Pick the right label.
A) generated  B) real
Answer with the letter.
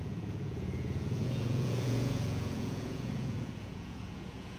A